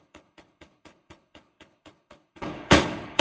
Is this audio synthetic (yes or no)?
yes